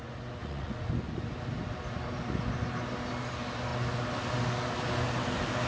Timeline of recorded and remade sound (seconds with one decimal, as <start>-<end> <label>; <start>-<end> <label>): 0.0-0.4 recorded; 0.4-0.9 remade; 0.9-5.7 recorded